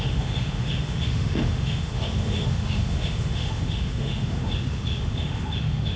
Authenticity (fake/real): fake